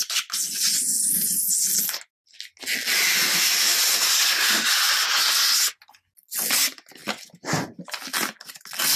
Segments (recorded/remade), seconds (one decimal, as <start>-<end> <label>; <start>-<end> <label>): 0.0-7.0 recorded; 7.0-7.7 remade; 7.7-9.0 recorded